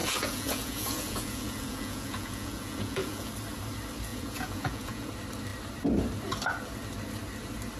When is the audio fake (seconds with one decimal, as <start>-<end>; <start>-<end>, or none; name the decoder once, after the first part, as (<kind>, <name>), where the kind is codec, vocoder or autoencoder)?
0.0-3.3 (vocoder, Vocos); 4.1-5.1